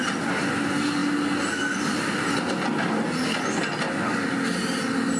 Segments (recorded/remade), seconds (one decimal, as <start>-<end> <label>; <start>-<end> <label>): 0.0-5.2 recorded